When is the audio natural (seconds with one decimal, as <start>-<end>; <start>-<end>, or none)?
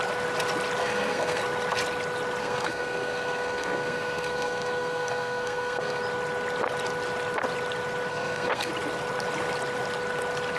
0.0-0.8; 1.4-2.4; 6.0-8.1; 8.7-10.6